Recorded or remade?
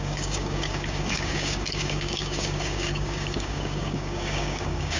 remade